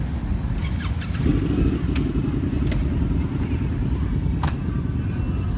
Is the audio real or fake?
real